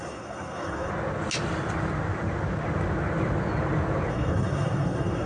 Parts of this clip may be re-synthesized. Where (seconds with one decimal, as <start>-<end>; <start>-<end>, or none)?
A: 0.0-0.9; 4.1-5.3